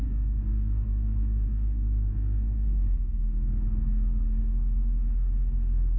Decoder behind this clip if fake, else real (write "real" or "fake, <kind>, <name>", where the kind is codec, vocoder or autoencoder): fake, codec, SNAC